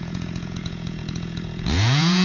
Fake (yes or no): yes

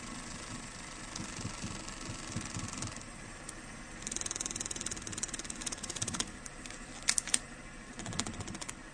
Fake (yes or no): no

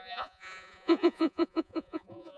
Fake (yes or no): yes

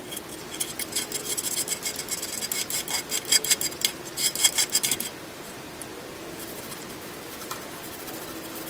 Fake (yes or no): no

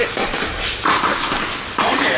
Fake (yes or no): no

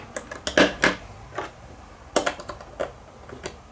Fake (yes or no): no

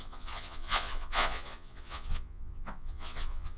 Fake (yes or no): yes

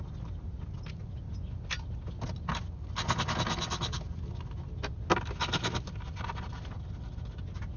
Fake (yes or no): no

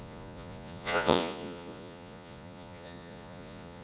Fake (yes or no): yes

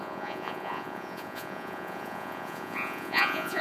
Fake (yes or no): yes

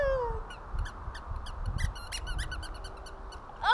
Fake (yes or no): no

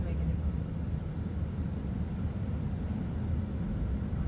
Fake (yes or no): no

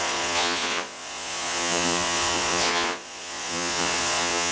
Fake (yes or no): yes